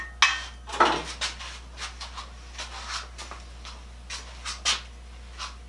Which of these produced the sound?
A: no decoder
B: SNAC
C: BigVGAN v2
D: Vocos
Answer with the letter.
A